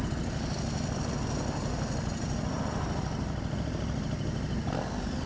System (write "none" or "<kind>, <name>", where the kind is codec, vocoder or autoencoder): none